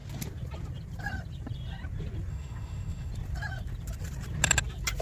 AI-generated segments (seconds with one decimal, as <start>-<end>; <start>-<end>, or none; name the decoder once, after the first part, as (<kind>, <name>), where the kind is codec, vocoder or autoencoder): 2.3-3.1 (autoencoder, DAC-VAE)